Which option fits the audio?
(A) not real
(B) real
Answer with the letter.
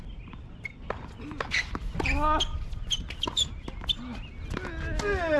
B